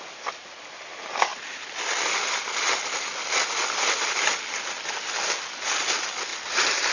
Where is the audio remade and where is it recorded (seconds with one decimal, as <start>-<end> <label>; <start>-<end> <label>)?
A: 0.0-6.9 recorded